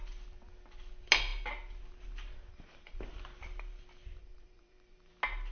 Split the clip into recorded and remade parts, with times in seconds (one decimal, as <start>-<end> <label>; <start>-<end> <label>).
0.0-2.5 recorded; 2.5-3.0 remade; 3.0-4.2 recorded; 4.2-5.1 remade; 5.1-5.5 recorded